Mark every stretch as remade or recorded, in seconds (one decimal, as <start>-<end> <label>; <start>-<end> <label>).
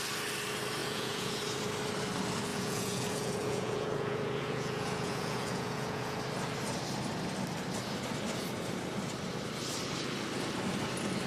0.0-0.8 recorded; 0.8-1.4 remade; 1.4-2.5 recorded; 2.5-6.2 remade; 6.2-11.3 recorded